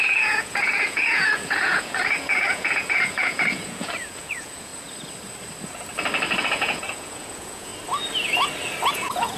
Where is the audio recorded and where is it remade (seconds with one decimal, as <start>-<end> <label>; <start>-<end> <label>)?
0.0-4.7 remade; 4.7-6.4 recorded; 6.4-7.7 remade; 7.7-8.9 recorded; 8.9-9.4 remade